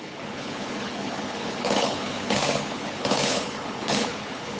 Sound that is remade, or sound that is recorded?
remade